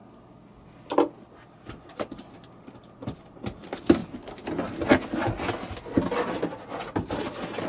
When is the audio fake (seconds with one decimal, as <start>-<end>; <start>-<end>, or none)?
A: none